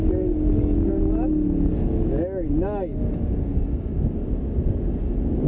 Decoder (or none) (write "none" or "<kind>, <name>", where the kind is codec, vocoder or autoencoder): none